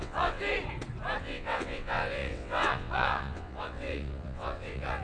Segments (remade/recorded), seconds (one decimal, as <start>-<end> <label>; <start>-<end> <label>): 0.0-0.4 remade; 0.4-1.2 recorded; 1.2-5.0 remade